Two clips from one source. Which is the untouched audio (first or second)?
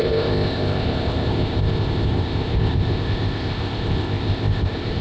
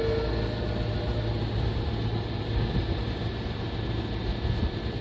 second